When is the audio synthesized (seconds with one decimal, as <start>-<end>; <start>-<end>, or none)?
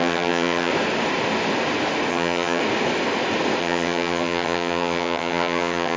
0.0-0.7; 2.1-2.6; 3.6-6.0